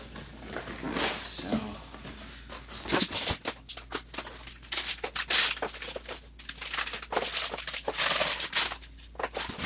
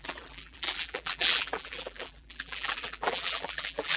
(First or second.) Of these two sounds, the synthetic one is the second